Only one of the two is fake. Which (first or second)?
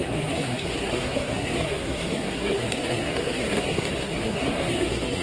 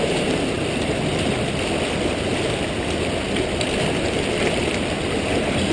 first